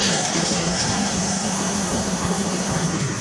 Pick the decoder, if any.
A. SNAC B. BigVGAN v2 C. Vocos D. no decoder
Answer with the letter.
A